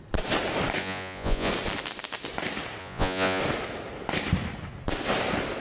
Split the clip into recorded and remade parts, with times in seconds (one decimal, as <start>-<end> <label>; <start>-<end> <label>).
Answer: 0.0-0.8 recorded; 0.8-1.5 remade; 1.5-2.8 recorded; 2.8-3.4 remade; 3.4-5.6 recorded